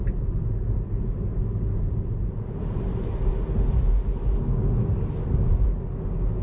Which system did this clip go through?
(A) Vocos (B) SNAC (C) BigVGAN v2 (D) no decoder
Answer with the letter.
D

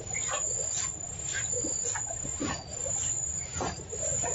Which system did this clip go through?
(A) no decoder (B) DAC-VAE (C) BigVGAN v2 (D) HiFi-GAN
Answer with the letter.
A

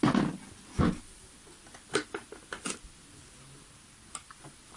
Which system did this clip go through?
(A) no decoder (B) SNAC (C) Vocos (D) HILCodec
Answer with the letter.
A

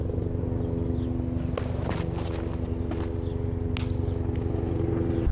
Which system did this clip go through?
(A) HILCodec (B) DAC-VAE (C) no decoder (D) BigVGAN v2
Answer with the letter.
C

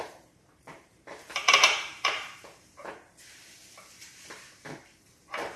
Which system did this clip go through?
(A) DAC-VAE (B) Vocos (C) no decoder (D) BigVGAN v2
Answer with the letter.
D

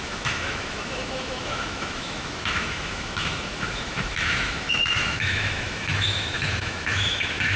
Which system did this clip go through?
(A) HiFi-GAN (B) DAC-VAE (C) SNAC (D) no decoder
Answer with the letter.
B